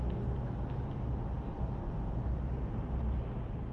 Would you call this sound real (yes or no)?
yes